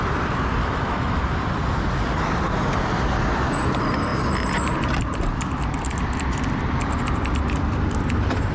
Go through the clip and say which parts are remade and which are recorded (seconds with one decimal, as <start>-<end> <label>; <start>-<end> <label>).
0.0-0.6 recorded; 0.6-1.2 remade; 1.2-8.5 recorded